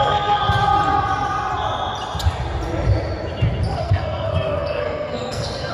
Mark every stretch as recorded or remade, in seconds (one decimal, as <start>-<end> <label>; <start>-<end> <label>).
0.0-0.4 remade; 0.4-3.8 recorded; 3.8-5.7 remade